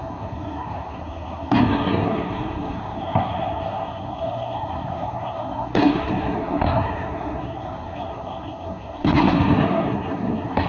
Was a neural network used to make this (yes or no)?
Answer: yes